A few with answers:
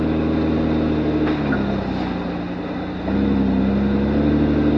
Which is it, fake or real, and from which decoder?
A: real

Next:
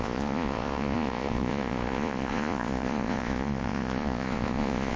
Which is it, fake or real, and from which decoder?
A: fake, vocoder, Vocos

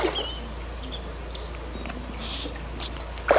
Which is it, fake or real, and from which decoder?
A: real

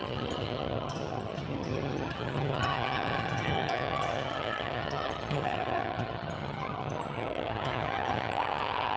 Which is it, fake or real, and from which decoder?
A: fake, vocoder, HiFi-GAN